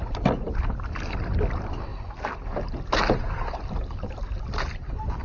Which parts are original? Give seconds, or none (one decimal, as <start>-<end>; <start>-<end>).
0.0-5.2